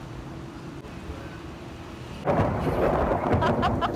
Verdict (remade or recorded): recorded